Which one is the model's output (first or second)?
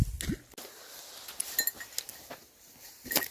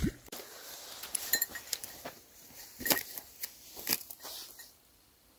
second